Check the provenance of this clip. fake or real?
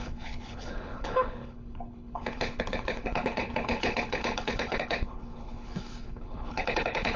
fake